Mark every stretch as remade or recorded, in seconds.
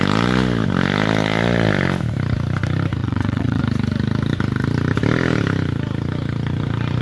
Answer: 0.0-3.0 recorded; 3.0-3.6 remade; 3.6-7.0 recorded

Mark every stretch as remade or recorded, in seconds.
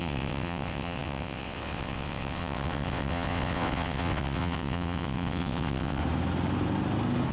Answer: 0.0-6.0 remade; 6.0-7.3 recorded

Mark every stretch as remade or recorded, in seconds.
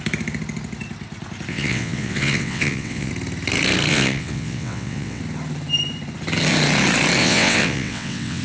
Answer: 0.0-1.5 recorded; 1.5-3.1 remade; 3.1-3.9 recorded; 3.9-5.2 remade; 5.2-7.2 recorded; 7.2-8.4 remade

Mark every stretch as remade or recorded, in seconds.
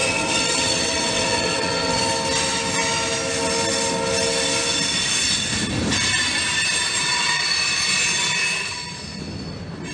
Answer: 0.0-2.0 remade; 2.0-7.0 recorded; 7.0-7.5 remade; 7.5-9.9 recorded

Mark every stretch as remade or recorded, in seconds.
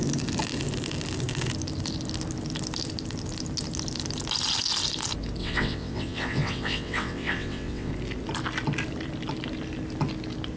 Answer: 0.0-5.4 recorded; 5.4-7.9 remade; 7.9-10.6 recorded